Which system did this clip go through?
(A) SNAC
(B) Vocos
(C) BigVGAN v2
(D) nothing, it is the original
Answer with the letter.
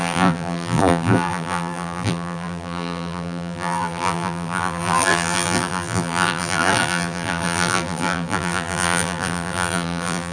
C